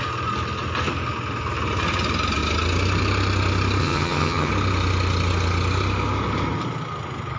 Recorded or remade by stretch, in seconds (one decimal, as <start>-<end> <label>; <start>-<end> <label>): 0.0-3.8 recorded; 3.8-4.5 remade; 4.5-7.4 recorded